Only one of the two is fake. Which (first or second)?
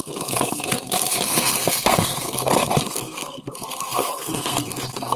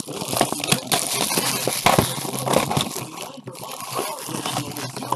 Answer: first